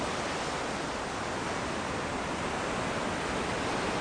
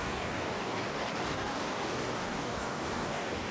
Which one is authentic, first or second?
first